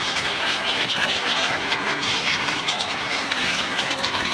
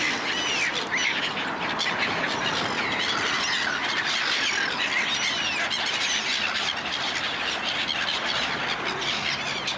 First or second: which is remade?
first